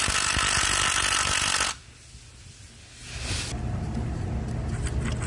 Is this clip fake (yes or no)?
no